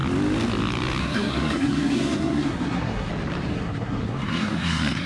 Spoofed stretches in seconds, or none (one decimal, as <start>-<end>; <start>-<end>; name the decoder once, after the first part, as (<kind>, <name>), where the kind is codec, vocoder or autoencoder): 1.0-3.1 (codec, SNAC); 3.5-5.1